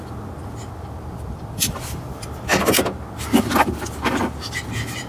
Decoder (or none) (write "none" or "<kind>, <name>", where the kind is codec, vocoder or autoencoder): none